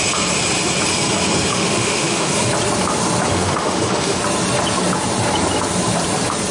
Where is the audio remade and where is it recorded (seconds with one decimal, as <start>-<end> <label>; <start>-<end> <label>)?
0.0-1.5 recorded; 1.5-2.3 remade; 2.3-3.3 recorded; 3.3-4.2 remade; 4.2-6.5 recorded